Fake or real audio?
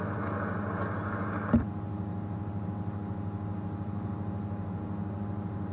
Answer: real